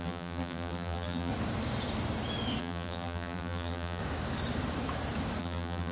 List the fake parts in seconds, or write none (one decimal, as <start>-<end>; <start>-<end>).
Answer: 0.0-1.3; 2.6-4.0; 5.4-5.9

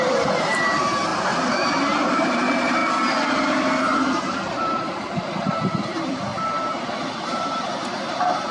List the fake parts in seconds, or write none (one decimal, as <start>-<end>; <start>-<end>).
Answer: 0.0-2.8; 3.3-6.3; 7.1-8.5

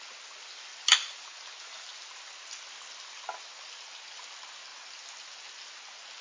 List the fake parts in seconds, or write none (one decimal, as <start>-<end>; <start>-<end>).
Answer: none

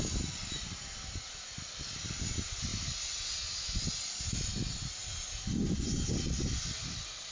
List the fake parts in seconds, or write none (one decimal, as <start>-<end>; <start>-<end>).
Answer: 0.0-2.7; 4.6-7.3

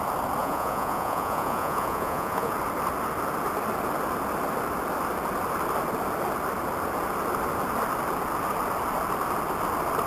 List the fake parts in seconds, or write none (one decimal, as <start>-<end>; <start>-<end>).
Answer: 0.4-2.5